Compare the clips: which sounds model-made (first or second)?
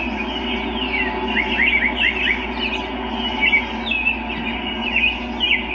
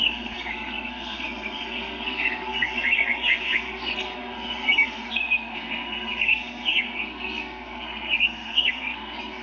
second